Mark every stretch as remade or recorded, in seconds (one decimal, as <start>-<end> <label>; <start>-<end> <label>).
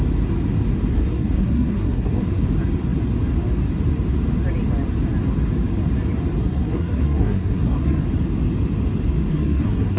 0.0-0.9 recorded; 0.9-2.4 remade; 2.4-6.4 recorded; 6.4-8.0 remade; 8.0-9.3 recorded; 9.3-10.0 remade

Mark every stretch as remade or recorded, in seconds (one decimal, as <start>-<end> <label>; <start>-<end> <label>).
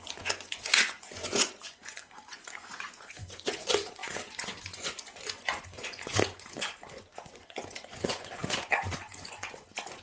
0.0-10.0 remade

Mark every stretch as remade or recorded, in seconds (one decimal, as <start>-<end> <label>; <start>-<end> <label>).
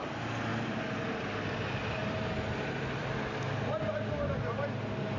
0.0-5.2 recorded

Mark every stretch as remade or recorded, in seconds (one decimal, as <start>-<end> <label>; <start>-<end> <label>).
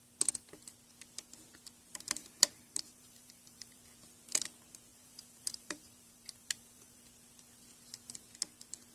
0.0-2.2 recorded; 2.2-3.8 remade; 3.8-4.9 recorded; 4.9-7.0 remade; 7.0-8.9 recorded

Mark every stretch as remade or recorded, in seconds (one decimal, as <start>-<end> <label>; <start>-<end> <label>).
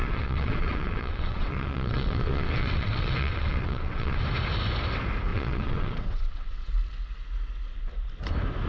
0.0-4.2 remade; 4.2-5.3 recorded; 5.3-6.7 remade; 6.7-8.7 recorded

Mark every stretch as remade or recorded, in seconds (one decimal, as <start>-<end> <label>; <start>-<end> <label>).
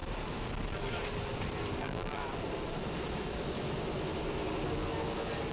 0.0-1.8 recorded; 1.8-2.2 remade; 2.2-5.5 recorded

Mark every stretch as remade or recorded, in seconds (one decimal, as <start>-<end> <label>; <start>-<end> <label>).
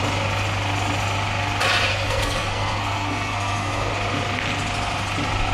0.0-1.9 recorded; 1.9-3.9 remade; 3.9-5.5 recorded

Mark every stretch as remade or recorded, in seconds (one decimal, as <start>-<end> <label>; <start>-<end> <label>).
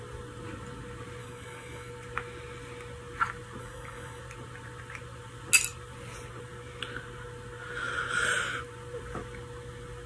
0.0-1.2 recorded; 1.2-1.9 remade; 1.9-3.6 recorded; 3.6-4.2 remade; 4.2-10.1 recorded